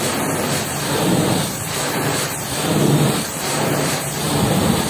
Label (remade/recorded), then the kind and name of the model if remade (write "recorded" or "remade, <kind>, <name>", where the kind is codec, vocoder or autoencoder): remade, vocoder, BigVGAN v2